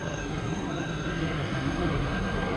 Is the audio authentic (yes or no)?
no